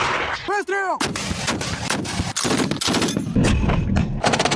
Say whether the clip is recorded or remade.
recorded